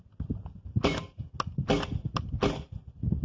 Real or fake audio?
real